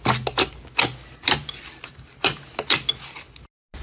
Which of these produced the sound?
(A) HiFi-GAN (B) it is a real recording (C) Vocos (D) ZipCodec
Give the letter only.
B